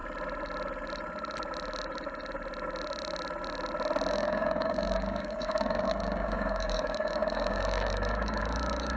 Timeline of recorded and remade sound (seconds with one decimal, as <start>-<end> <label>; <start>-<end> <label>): 0.0-4.1 recorded; 4.1-9.0 remade